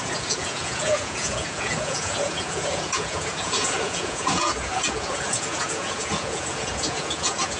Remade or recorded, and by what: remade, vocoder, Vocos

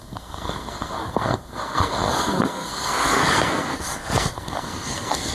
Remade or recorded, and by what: remade, codec, SNAC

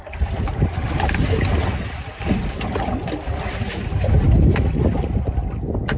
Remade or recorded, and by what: recorded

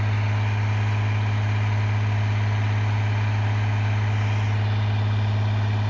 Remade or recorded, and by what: recorded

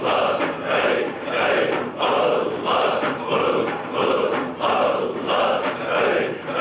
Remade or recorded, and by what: remade, vocoder, BigVGAN v2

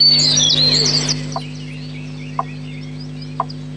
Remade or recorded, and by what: recorded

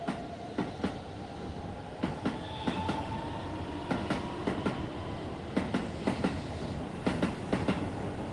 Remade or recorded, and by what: recorded